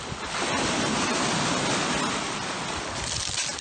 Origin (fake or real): real